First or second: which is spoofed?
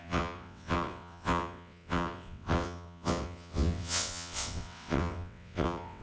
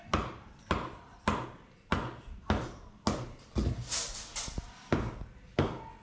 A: first